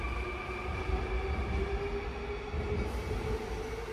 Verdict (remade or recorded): recorded